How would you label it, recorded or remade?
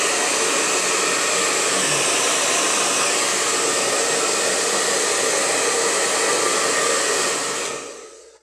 recorded